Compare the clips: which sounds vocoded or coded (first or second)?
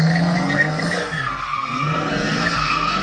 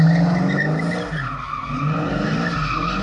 first